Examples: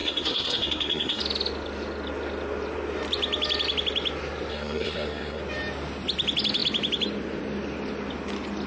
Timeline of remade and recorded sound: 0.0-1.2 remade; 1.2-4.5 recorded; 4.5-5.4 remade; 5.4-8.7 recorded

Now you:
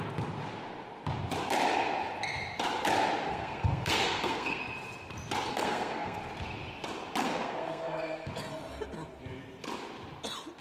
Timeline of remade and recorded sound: 0.0-3.2 recorded; 3.2-4.6 remade; 4.6-5.5 recorded; 5.5-6.2 remade; 6.2-7.2 recorded; 7.2-8.3 remade; 8.3-10.6 recorded

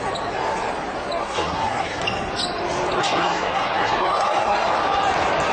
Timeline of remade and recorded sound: 0.0-1.2 recorded; 1.2-2.0 remade; 2.0-3.0 recorded; 3.0-4.7 remade; 4.7-5.5 recorded

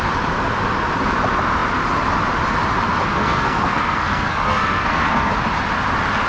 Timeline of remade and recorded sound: 0.0-3.1 recorded; 3.1-5.3 remade; 5.3-6.3 recorded

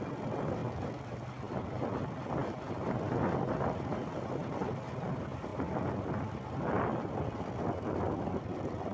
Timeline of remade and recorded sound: 0.0-8.9 recorded

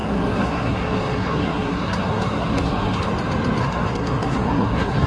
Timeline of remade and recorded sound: 0.0-3.1 remade; 3.1-3.6 recorded; 3.6-5.1 remade